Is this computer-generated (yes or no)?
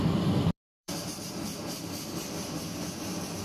yes